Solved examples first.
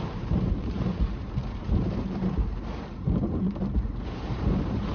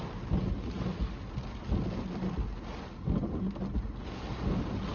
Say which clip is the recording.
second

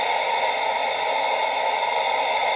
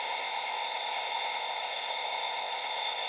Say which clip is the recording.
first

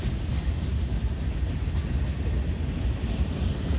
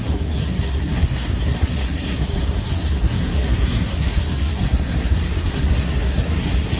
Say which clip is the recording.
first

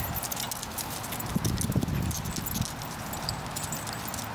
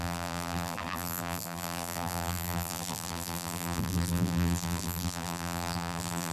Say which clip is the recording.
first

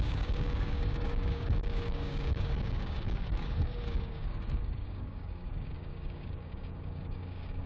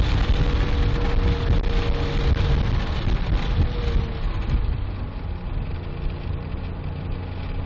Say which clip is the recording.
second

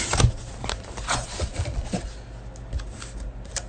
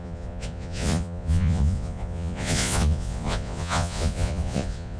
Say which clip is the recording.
first